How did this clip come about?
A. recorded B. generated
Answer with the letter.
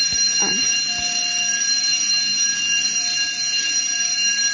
A